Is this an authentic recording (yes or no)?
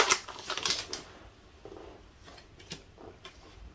yes